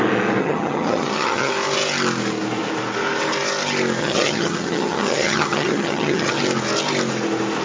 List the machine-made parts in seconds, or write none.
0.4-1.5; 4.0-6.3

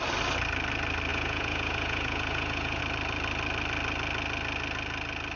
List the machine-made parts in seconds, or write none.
1.1-2.8

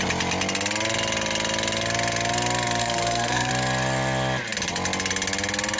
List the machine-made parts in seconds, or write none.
2.8-3.5

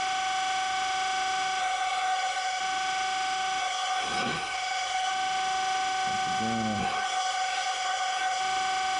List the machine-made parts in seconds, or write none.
1.6-2.6; 3.6-5.1; 6.8-8.4